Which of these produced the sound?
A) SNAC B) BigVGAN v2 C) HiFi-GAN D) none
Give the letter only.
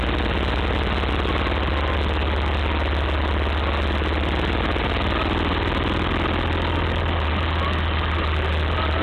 D